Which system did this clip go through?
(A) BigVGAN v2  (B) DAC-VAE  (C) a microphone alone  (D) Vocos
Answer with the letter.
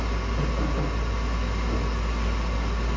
C